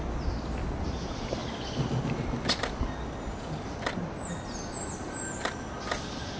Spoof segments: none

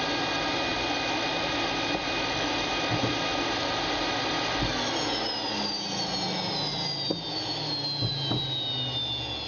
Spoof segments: none